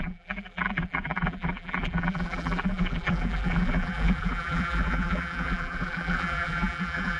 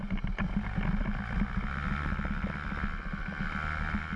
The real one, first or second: second